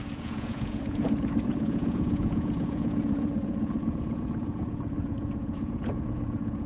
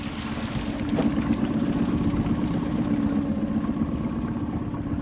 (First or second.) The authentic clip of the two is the second